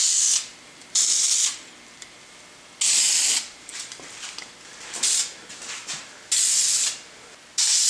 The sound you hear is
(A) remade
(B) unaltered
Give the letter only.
B